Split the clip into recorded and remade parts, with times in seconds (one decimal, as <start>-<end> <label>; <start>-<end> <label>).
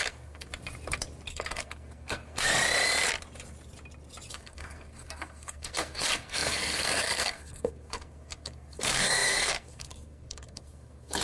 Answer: 0.0-0.5 remade; 0.5-1.3 recorded; 1.3-2.5 remade; 2.5-4.3 recorded; 4.3-11.2 remade